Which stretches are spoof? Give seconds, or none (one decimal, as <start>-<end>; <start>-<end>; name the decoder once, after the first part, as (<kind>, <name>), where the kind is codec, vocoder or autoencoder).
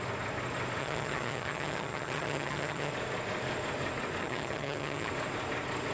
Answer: 0.8-2.9 (vocoder, HiFi-GAN); 4.2-5.1